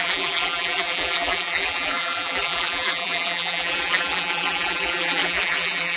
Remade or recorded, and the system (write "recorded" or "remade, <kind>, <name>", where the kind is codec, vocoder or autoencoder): remade, vocoder, BigVGAN v2